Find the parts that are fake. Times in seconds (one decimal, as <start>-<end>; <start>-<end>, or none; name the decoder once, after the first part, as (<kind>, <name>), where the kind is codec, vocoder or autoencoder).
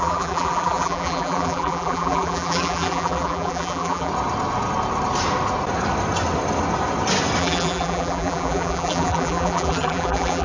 0.0-4.1 (vocoder, BigVGAN v2); 7.4-10.4